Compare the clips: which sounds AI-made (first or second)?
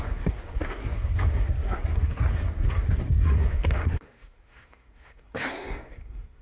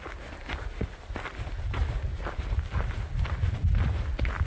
first